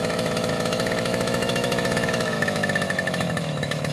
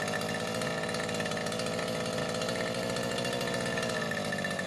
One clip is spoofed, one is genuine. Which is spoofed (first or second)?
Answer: first